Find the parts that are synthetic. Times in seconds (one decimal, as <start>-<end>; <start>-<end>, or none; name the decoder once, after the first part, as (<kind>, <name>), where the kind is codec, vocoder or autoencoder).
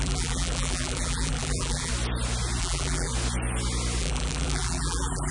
0.0-1.9 (vocoder, BigVGAN v2); 2.6-3.1; 4.0-5.3